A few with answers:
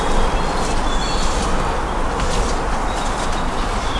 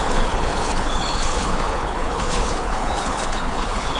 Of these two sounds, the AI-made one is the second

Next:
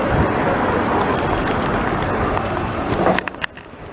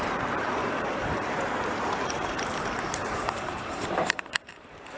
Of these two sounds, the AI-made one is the second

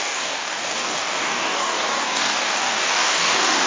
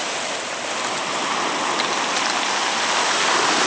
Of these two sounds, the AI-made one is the first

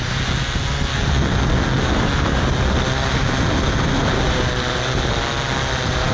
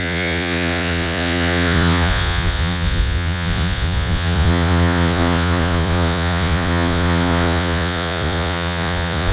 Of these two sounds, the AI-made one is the second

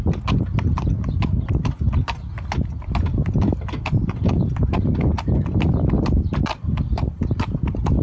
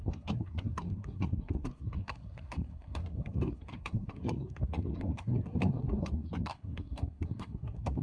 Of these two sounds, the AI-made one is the second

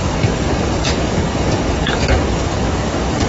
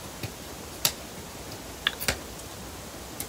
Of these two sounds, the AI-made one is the first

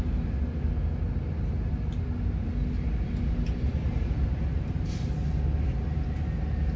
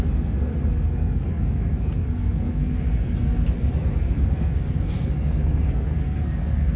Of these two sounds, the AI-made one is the second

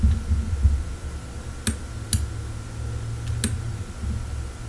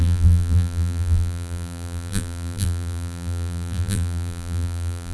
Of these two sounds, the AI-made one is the second